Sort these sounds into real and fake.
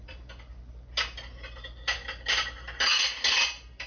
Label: real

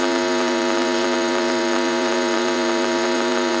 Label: fake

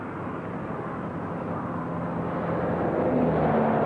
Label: real